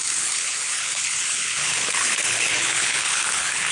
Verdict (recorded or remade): remade